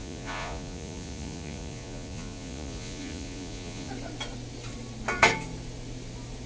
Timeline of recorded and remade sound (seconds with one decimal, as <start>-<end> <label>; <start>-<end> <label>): 0.0-3.9 remade; 3.9-6.5 recorded